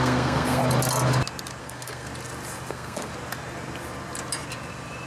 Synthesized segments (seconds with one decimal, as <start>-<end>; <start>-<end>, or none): 0.0-0.6; 1.6-2.1; 2.7-3.1